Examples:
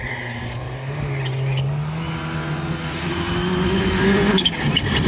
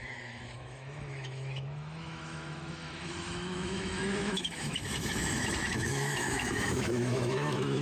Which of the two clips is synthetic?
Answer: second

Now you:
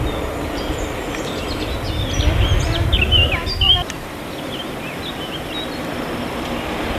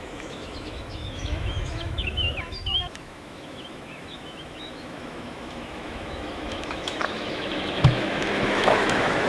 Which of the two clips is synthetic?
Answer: second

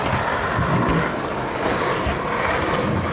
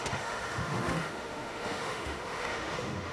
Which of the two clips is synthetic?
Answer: second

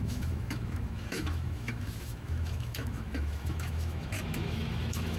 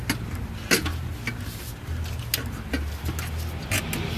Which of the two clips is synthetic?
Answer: first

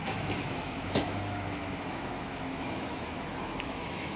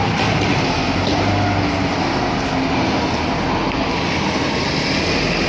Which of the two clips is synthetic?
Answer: first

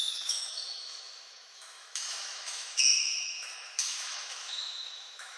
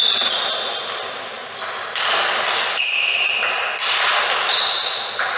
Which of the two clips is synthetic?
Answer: first